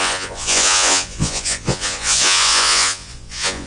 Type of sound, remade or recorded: remade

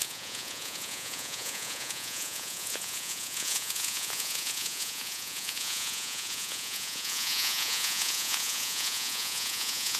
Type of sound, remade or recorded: remade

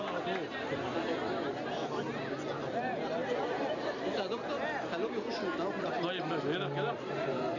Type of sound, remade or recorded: recorded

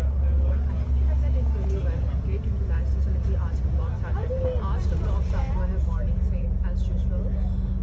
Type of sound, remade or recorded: recorded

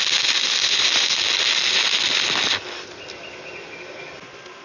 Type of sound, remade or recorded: recorded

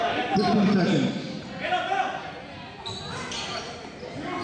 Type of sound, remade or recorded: recorded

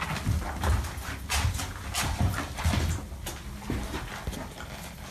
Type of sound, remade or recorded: recorded